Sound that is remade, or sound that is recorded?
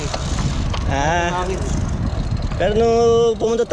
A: recorded